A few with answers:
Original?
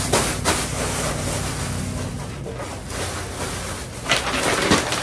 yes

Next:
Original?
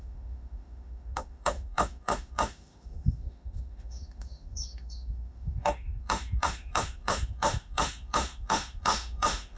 no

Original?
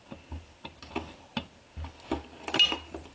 yes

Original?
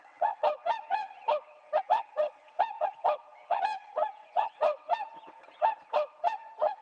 no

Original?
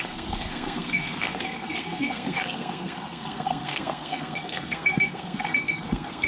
no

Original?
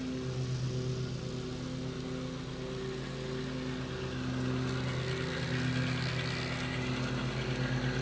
yes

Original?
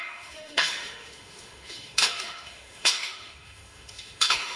no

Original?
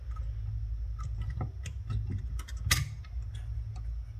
yes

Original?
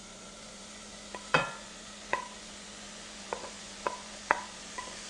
no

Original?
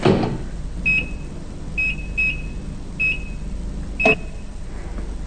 yes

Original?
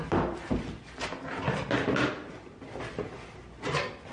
yes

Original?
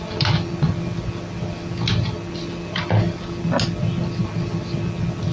yes